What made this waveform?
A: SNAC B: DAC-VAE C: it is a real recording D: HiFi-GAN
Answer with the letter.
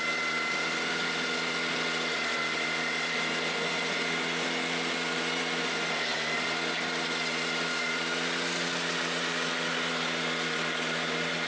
C